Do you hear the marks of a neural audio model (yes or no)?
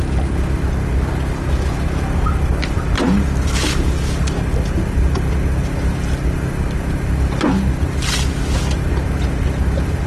no